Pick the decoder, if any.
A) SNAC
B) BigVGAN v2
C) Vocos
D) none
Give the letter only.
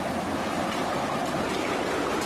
D